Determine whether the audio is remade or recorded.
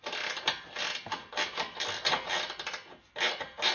recorded